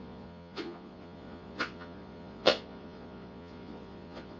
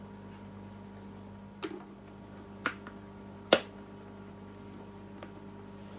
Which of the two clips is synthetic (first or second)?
first